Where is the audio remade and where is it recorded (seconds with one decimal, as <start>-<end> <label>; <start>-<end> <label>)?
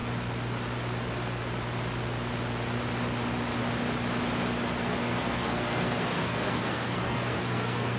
0.0-4.8 recorded; 4.8-8.0 remade